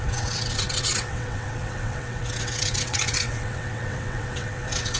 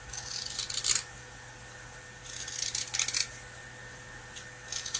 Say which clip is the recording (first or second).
second